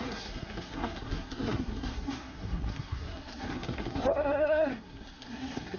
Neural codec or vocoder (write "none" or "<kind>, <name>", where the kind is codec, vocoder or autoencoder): codec, SNAC